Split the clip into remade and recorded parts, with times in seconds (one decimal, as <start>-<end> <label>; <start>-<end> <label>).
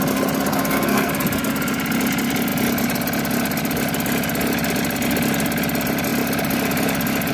0.0-0.5 recorded; 0.5-1.1 remade; 1.1-7.3 recorded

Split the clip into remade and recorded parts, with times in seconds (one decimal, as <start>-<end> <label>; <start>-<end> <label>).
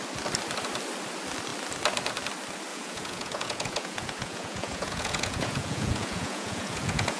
0.0-2.7 recorded; 2.7-7.2 remade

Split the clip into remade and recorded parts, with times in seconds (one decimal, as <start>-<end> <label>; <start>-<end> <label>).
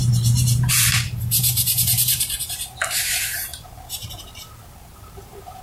0.0-5.6 remade